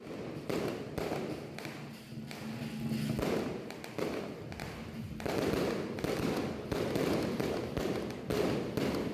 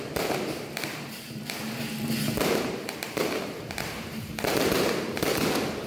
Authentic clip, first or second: first